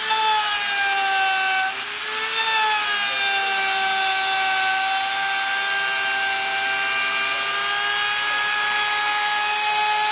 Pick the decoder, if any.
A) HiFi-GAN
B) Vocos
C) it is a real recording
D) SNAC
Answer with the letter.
C